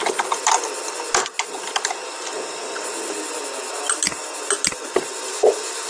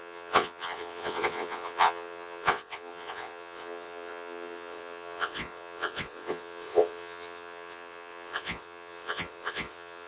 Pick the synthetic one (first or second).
second